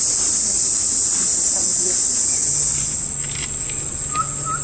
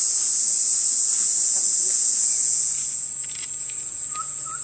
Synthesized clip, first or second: second